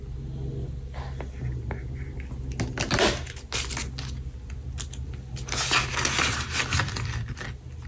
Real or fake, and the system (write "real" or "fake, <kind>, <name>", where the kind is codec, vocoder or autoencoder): real